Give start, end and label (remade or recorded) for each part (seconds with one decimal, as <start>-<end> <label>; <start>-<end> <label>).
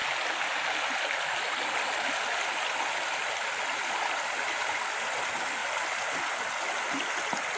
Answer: 0.0-7.6 recorded